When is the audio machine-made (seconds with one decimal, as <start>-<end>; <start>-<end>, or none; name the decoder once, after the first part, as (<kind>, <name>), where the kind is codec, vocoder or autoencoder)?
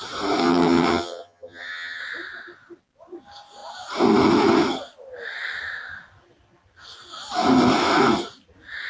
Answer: 0.4-2.0 (vocoder, HiFi-GAN)